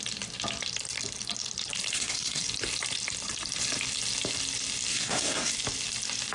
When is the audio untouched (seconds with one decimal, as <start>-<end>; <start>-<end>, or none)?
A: 0.0-1.9; 2.4-4.9; 5.5-6.3

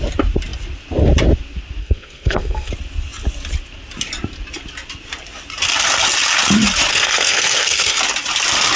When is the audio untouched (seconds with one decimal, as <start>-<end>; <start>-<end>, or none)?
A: 0.0-1.8; 2.7-6.9; 8.0-8.8

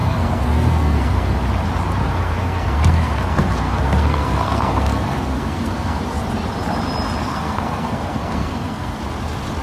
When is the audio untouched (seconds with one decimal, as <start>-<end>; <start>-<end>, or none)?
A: 1.3-2.0; 6.0-7.2; 9.0-9.6

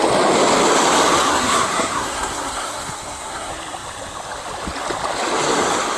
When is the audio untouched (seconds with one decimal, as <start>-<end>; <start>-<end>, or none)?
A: 0.0-1.3; 3.5-6.0

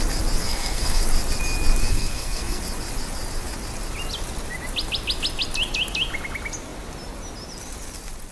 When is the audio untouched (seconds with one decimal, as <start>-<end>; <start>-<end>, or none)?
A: 0.0-0.4; 1.0-1.8; 2.6-8.3

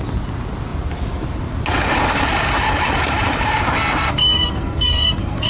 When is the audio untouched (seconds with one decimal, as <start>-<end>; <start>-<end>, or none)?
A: 0.0-4.1

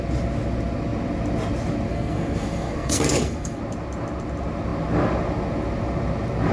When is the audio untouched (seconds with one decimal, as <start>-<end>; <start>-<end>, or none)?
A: 0.0-1.9; 3.6-6.5

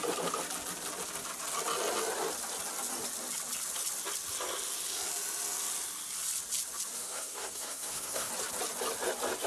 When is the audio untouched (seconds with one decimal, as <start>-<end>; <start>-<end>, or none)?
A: 0.0-7.0; 8.3-9.5